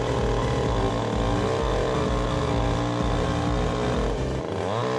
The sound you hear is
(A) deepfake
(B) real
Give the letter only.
B